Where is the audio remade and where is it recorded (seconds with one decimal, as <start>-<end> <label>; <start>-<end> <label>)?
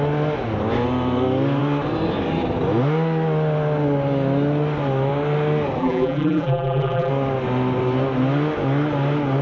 0.0-5.8 recorded; 5.8-7.1 remade; 7.1-9.4 recorded